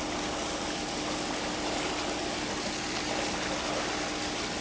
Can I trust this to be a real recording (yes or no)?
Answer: yes